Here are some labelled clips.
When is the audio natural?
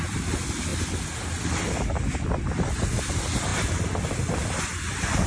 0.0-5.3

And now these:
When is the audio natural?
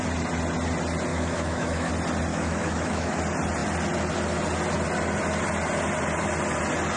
0.0-1.1; 1.9-2.3; 3.2-7.0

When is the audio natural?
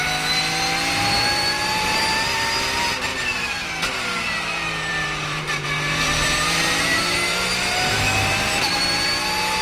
0.0-0.9; 2.0-3.1; 3.7-4.9; 8.0-9.6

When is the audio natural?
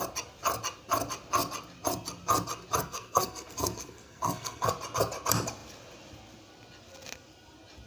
0.0-2.8; 4.7-7.9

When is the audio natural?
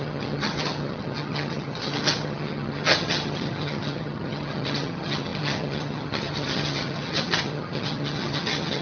none